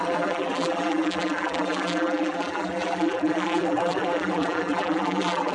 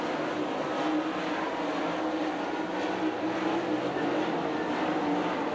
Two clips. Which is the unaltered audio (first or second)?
second